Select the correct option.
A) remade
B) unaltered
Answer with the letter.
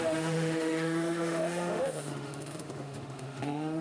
A